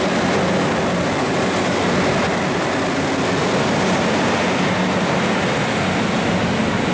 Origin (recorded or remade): recorded